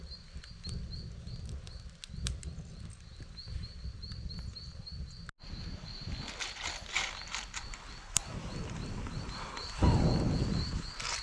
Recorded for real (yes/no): yes